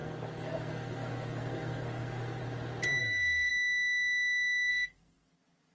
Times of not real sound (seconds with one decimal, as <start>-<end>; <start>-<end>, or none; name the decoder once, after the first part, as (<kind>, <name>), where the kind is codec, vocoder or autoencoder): 0.0-2.4 (codec, SNAC); 3.0-3.5; 4.7-5.3